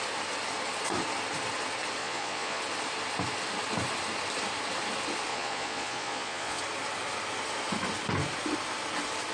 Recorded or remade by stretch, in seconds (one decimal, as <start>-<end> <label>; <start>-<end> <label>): 0.0-2.0 recorded; 2.0-2.6 remade; 2.6-5.3 recorded; 5.3-6.6 remade; 6.6-9.3 recorded

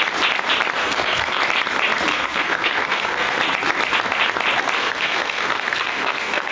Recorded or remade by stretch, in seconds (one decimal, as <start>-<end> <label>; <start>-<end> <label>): 0.0-0.8 recorded; 0.8-1.4 remade; 1.4-2.1 recorded; 2.1-3.4 remade; 3.4-4.8 recorded; 4.8-6.5 remade

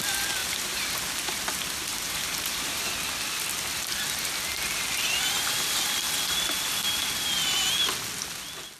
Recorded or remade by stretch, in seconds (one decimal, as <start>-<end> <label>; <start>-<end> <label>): 0.0-0.4 recorded; 0.4-0.9 remade; 0.9-1.9 recorded; 1.9-2.8 remade; 2.8-8.8 recorded